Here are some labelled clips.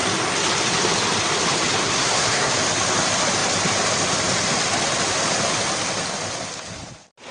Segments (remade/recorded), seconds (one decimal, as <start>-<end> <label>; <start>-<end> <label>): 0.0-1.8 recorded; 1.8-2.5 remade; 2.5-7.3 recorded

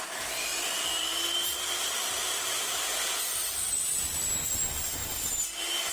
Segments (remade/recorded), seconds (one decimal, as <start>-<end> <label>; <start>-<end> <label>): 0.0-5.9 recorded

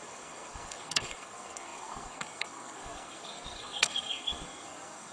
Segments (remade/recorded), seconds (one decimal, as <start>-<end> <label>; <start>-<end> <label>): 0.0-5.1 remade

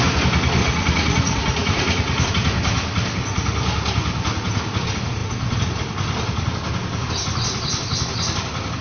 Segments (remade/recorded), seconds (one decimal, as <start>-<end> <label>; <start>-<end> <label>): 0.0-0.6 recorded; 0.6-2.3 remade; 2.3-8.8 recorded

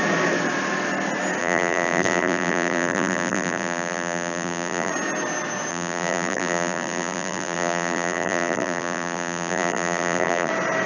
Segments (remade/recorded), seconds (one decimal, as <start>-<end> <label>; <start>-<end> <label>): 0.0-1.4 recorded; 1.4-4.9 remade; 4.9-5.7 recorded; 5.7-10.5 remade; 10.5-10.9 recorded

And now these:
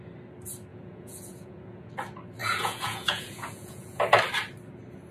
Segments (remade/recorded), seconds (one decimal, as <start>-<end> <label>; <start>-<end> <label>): 0.0-0.7 recorded; 0.7-1.9 remade; 1.9-2.4 recorded; 2.4-4.0 remade; 4.0-5.1 recorded

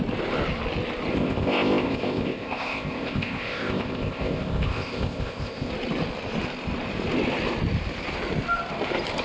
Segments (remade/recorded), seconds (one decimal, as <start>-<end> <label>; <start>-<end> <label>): 0.0-1.1 recorded; 1.1-5.7 remade; 5.7-9.2 recorded

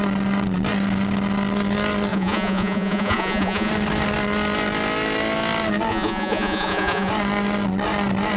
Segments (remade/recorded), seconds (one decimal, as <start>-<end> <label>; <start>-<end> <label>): 0.0-2.1 recorded; 2.1-3.7 remade; 3.7-5.9 recorded; 5.9-7.1 remade; 7.1-8.4 recorded